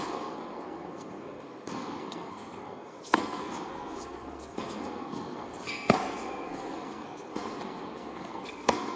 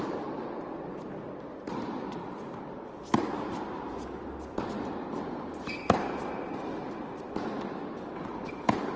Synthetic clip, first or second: first